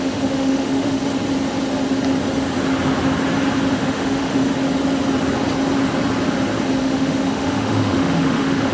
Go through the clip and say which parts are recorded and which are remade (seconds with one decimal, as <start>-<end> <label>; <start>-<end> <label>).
0.0-1.0 remade; 1.0-3.7 recorded; 3.7-4.5 remade; 4.5-6.8 recorded; 6.8-8.7 remade